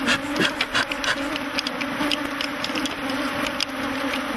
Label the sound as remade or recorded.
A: recorded